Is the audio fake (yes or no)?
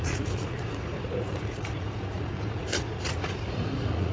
yes